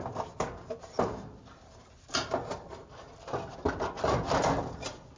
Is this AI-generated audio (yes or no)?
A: no